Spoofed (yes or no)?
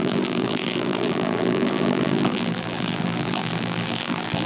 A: yes